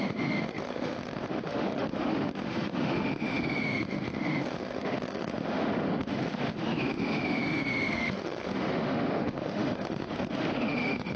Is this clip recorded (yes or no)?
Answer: no